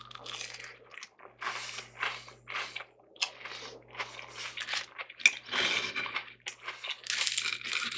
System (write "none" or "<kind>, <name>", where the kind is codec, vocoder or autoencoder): none